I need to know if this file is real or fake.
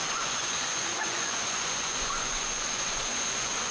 fake